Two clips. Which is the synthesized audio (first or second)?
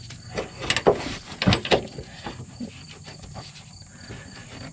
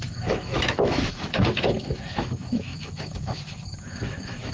second